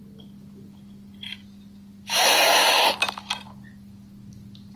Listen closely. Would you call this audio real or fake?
real